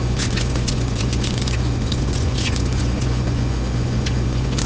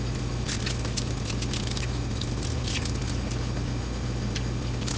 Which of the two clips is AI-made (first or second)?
first